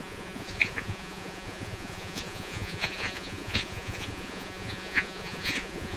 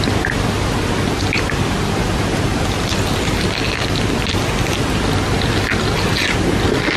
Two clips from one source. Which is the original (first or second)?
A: second